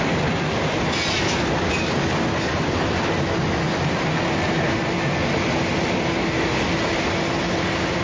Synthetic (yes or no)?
no